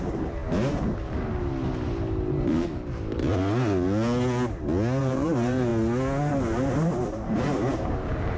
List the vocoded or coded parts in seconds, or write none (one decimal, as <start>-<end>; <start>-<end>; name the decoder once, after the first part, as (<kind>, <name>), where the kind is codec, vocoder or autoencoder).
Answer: 0.0-0.4 (vocoder, BigVGAN v2); 5.0-5.7; 6.3-8.4